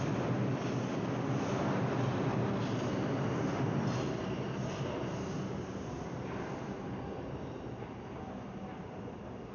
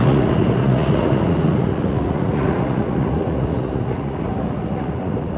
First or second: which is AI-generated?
second